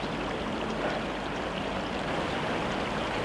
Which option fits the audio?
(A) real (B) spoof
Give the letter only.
A